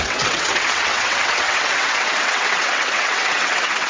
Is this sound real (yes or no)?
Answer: no